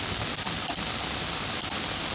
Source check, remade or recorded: recorded